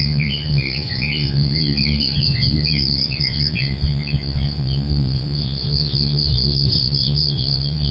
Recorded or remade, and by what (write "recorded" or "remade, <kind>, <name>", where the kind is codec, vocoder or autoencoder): remade, vocoder, Vocos